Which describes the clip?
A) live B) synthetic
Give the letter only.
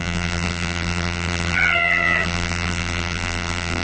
B